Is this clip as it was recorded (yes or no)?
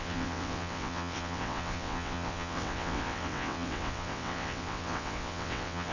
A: no